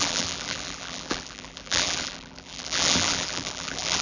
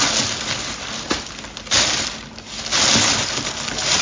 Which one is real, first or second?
second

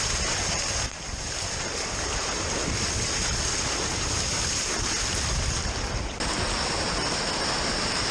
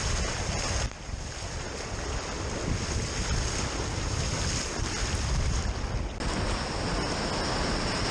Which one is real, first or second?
second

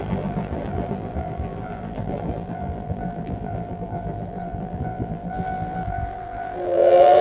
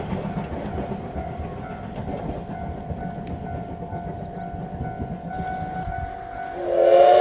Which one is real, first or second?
second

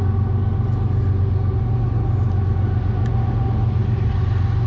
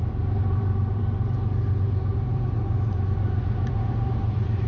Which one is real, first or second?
first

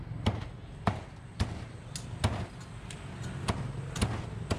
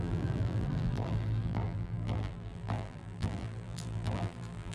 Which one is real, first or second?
first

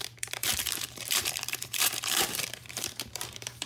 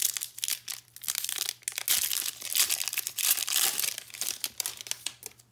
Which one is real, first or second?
second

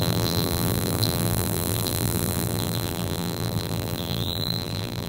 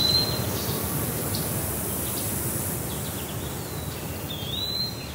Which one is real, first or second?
second